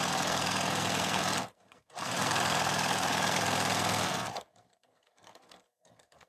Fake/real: fake